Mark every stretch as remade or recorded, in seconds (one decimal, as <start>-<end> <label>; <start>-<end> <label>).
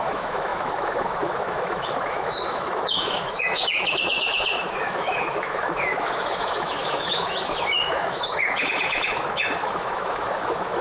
0.0-10.8 remade